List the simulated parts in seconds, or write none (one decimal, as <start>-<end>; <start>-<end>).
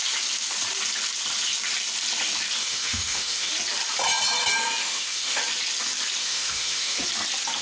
2.6-3.5; 4.8-5.4; 6.2-7.0